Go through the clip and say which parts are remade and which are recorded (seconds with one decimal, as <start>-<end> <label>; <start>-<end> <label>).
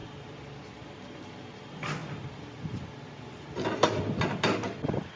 0.0-5.2 recorded